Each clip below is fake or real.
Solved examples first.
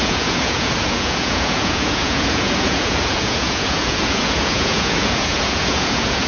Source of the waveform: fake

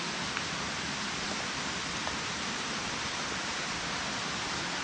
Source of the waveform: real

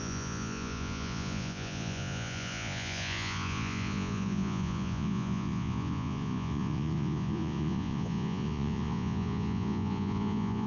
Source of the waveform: fake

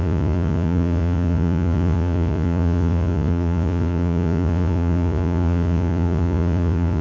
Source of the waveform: fake